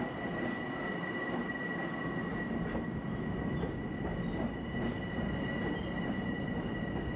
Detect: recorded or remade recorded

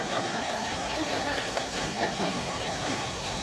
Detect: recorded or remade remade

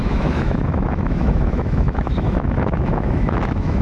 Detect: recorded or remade remade